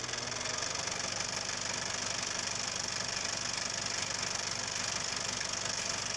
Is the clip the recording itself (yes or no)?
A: yes